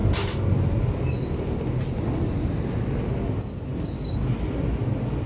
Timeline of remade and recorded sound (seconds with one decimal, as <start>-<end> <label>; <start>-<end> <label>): 0.0-5.3 recorded